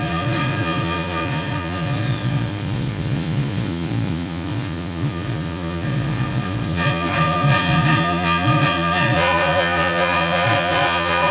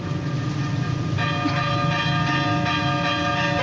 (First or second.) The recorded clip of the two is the second